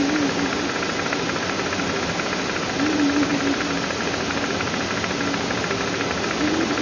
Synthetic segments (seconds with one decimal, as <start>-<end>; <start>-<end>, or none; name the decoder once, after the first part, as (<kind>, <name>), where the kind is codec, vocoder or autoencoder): none